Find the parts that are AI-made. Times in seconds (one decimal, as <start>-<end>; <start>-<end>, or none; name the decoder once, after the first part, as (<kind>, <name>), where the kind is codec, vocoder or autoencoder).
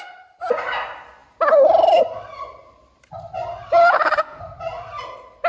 3.8-4.4 (autoencoder, DAC-VAE)